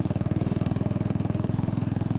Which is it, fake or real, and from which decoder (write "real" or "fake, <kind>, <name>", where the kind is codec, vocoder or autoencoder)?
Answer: fake, autoencoder, DAC-VAE